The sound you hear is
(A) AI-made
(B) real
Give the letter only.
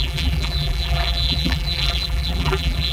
A